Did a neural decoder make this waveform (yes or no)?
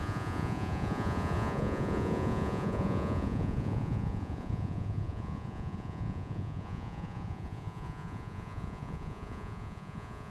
yes